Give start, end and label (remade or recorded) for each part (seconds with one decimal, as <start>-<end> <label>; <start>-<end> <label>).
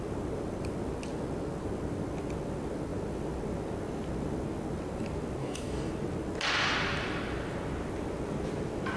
0.0-5.4 recorded; 5.4-5.9 remade; 5.9-9.0 recorded